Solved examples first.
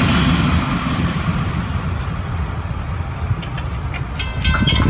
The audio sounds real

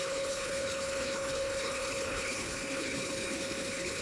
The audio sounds fake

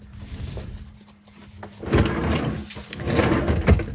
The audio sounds real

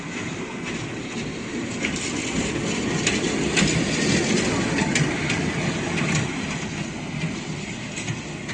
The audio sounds real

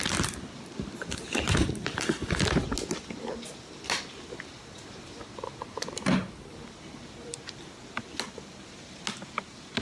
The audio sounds real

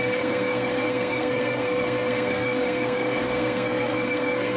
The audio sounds fake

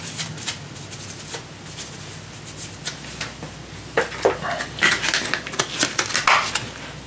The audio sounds real